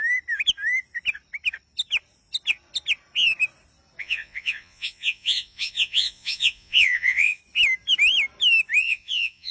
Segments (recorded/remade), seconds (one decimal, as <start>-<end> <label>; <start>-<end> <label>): 0.0-4.0 recorded; 4.0-7.4 remade; 7.4-8.8 recorded; 8.8-9.5 remade